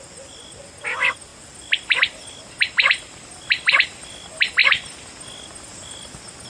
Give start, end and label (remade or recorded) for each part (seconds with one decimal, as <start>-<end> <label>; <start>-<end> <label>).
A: 0.0-6.5 recorded